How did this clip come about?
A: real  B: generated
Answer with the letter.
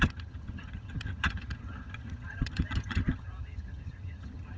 B